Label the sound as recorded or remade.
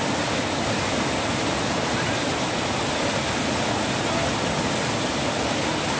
recorded